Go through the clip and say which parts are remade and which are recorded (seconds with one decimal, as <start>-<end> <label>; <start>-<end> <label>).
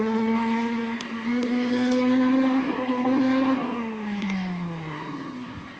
0.0-5.8 remade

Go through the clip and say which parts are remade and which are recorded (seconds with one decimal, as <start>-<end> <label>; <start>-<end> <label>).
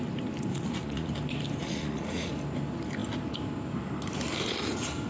0.0-0.5 recorded; 0.5-1.1 remade; 1.1-1.6 recorded; 1.6-2.3 remade; 2.3-5.1 recorded